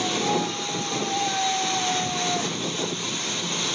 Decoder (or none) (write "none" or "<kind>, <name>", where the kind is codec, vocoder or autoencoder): none